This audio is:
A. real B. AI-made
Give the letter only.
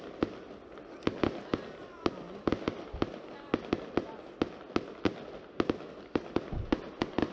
A